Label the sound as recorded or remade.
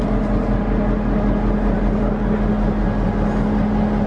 recorded